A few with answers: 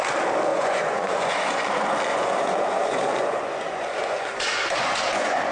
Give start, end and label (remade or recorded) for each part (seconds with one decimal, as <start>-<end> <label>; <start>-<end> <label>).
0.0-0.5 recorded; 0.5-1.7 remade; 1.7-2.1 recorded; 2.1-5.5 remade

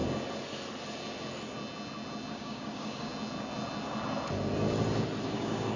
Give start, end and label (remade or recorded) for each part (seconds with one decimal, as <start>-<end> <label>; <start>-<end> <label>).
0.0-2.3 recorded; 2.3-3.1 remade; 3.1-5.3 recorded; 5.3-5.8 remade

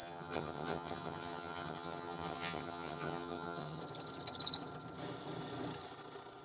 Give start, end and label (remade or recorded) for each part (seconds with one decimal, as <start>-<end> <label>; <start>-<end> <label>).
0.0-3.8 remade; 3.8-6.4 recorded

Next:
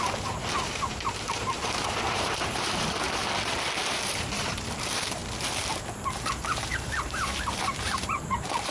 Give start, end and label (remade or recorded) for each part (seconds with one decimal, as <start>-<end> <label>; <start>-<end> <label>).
0.0-3.2 remade; 3.2-4.1 recorded; 4.1-5.2 remade; 5.2-5.8 recorded; 5.8-8.7 remade

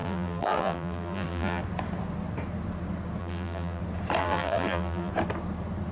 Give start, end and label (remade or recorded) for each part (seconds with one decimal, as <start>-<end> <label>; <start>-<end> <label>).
0.0-1.6 remade; 1.6-3.2 recorded; 3.2-3.8 remade; 3.8-4.2 recorded; 4.2-5.1 remade; 5.1-5.9 recorded

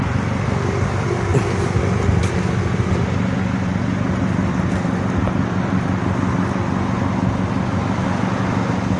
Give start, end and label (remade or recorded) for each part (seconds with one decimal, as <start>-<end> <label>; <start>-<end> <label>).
0.0-9.0 recorded

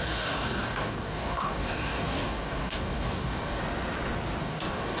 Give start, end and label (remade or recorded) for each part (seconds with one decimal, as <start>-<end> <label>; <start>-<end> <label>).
0.0-3.6 remade; 3.6-4.4 recorded; 4.4-5.0 remade

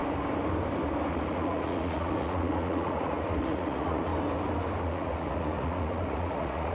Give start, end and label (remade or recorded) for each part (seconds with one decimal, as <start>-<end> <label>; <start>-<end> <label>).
0.0-1.1 recorded; 1.1-4.1 remade; 4.1-4.8 recorded; 4.8-6.7 remade